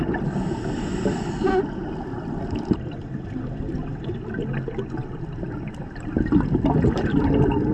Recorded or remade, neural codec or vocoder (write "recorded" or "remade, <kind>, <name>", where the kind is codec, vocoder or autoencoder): recorded